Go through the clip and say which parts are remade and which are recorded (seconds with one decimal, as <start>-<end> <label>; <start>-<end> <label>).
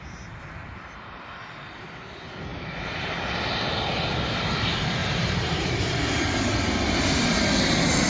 0.0-0.6 recorded; 0.6-1.2 remade; 1.2-2.5 recorded; 2.5-3.1 remade; 3.1-5.0 recorded; 5.0-6.4 remade; 6.4-8.1 recorded